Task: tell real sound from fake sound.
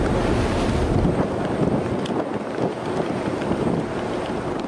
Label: real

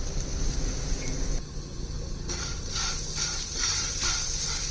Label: fake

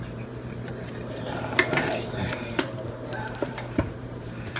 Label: fake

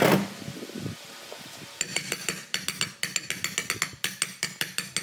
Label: real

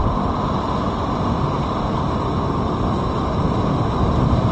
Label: real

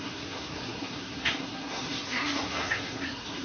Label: fake